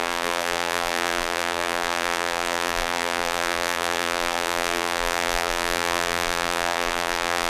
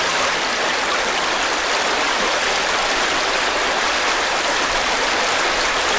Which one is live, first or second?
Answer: second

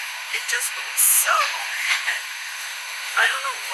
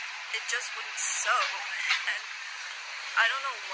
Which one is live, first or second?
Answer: second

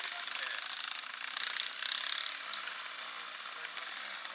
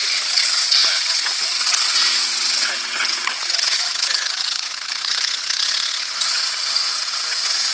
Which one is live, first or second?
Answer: first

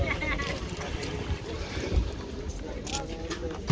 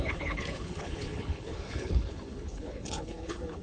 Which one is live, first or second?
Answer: first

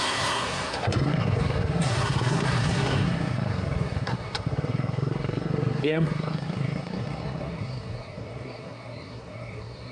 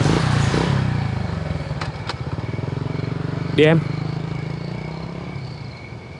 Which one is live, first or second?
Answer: second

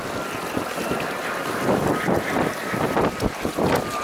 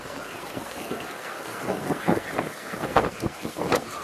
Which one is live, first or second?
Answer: first